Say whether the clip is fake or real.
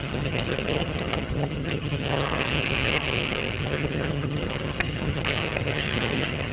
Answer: fake